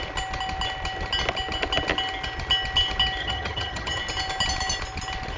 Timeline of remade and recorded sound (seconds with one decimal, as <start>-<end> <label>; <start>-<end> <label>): 0.0-3.2 recorded; 3.2-4.0 remade; 4.0-5.4 recorded